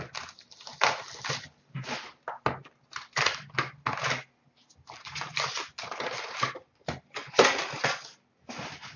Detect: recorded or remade recorded